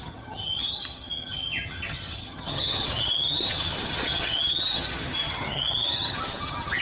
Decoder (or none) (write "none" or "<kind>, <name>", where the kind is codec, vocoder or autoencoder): vocoder, HiFi-GAN